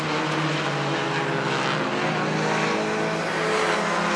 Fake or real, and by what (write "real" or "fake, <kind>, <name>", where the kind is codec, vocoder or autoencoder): real